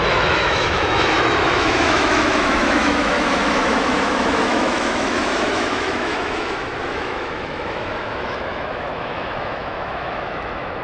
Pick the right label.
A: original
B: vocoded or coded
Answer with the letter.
B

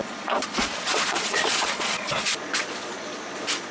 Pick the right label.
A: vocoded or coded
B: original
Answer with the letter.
A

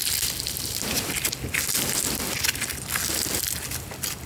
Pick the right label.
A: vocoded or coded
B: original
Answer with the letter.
B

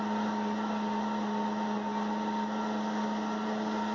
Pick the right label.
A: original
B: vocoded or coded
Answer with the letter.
A